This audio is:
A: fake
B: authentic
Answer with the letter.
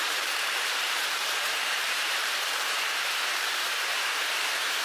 A